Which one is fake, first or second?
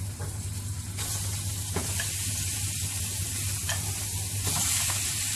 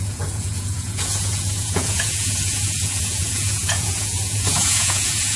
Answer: second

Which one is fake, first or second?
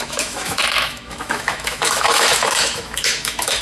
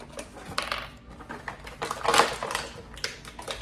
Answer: first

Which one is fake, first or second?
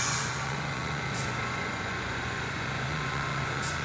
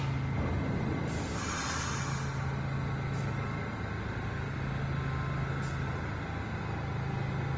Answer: first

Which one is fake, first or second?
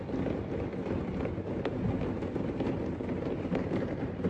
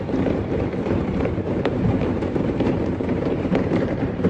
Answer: second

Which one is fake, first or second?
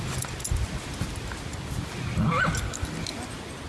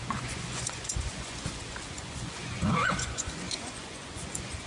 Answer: second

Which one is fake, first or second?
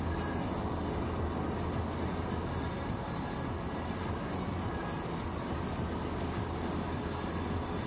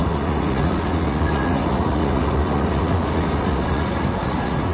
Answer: second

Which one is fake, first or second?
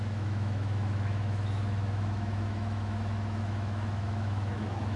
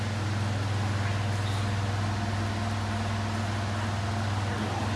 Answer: first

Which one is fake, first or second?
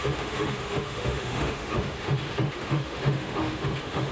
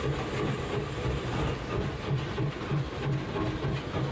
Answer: first